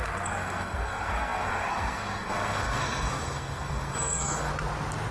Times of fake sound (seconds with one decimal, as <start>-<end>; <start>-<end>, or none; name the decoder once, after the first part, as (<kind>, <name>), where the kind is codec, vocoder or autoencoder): 0.0-4.5 (codec, SNAC)